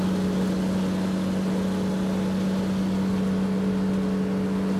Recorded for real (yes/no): yes